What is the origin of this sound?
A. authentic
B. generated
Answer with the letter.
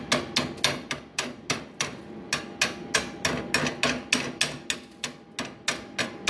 A